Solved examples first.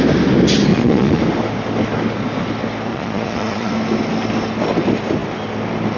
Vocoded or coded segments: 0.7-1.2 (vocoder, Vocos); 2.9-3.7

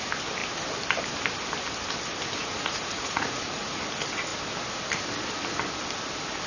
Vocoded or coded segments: 2.4-3.8 (vocoder, Vocos)

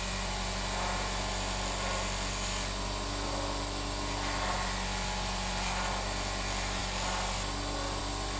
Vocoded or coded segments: none

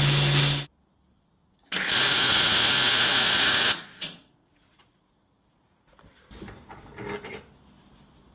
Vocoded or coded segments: 1.4-6.0 (vocoder, Vocos)

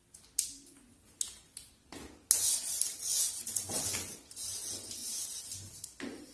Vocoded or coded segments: none

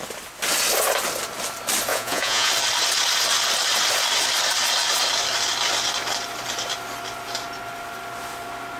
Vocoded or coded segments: 1.9-2.5 (vocoder, Vocos)